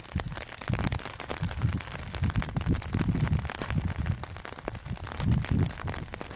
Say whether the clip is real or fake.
real